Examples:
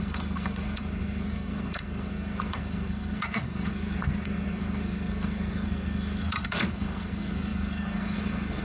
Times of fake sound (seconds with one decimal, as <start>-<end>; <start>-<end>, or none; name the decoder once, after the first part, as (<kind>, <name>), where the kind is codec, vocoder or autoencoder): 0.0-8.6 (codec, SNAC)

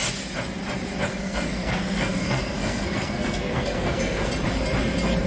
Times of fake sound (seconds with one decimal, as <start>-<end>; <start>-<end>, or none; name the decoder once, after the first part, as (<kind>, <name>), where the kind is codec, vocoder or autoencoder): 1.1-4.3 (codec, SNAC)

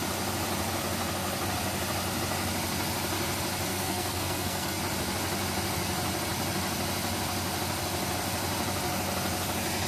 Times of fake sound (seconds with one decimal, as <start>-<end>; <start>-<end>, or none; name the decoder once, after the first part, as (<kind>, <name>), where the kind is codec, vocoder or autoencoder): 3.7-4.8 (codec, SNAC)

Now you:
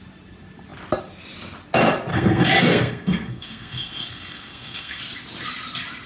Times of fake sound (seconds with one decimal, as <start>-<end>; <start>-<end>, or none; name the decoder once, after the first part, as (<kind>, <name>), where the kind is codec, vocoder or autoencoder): 2.1-5.0 (codec, SNAC)

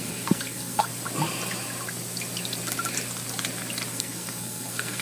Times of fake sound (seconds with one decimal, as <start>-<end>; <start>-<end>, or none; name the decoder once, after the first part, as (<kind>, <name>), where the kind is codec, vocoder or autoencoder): 0.0-0.9 (codec, SNAC); 3.9-5.0

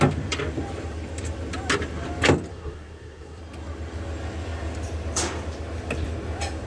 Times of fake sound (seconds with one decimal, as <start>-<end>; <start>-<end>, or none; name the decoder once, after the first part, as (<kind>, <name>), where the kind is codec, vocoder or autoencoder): 2.5-3.4 (codec, SNAC)

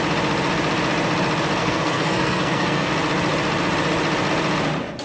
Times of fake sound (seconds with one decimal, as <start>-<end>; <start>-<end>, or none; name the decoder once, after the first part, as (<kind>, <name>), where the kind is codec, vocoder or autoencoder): 1.6-2.9 (codec, SNAC)